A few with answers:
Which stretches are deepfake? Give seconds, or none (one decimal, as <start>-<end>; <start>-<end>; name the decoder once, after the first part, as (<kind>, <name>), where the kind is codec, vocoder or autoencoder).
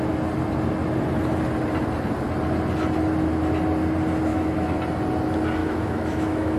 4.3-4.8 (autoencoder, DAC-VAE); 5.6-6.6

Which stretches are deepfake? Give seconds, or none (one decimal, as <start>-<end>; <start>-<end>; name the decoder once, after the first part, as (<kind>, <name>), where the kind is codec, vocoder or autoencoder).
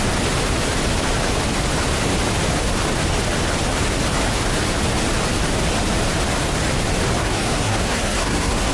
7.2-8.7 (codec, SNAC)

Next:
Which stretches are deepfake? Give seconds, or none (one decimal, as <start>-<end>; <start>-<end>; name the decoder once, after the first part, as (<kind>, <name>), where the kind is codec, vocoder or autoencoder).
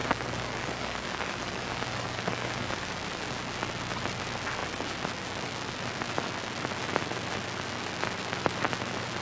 0.0-2.9 (codec, DAC)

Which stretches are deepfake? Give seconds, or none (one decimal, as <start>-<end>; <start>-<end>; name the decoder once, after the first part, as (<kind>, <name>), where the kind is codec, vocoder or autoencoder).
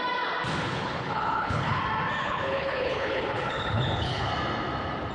0.6-1.8 (codec, HILCodec); 2.2-4.3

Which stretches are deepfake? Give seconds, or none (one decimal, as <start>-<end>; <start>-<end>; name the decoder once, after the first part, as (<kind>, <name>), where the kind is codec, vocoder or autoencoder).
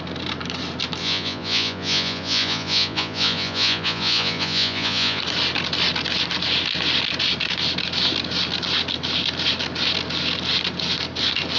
1.0-5.2 (vocoder, Vocos)